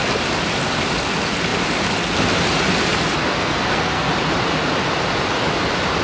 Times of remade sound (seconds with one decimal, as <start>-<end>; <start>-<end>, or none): 3.3-4.1